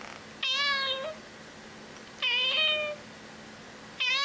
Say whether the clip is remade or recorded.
recorded